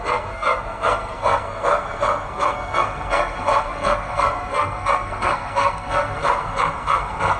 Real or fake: fake